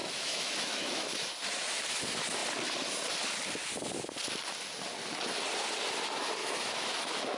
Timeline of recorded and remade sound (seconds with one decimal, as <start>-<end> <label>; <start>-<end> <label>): 0.0-1.3 remade; 1.3-6.4 recorded; 6.4-7.4 remade